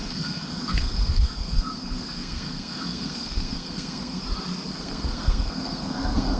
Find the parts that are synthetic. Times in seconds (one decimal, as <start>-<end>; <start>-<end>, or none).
0.0-4.2; 4.7-6.4